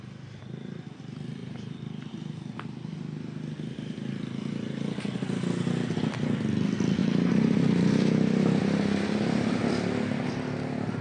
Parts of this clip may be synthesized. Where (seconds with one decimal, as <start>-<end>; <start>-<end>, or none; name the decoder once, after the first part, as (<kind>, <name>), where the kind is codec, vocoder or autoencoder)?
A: 1.4-2.4 (vocoder, BigVGAN v2); 7.0-8.6

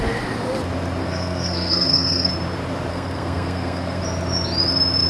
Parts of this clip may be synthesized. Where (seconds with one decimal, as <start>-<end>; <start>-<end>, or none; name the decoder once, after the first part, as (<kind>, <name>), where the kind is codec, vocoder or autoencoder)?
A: 1.0-2.3 (codec, SNAC); 2.9-4.0

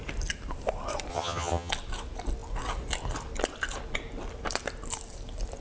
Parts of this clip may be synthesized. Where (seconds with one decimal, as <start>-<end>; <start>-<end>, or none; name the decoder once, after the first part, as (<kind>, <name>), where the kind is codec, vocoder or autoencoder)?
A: 1.1-1.7 (vocoder, HiFi-GAN)

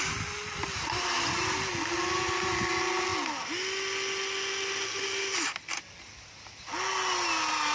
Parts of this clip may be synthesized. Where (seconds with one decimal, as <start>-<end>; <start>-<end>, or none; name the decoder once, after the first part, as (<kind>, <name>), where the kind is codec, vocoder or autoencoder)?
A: none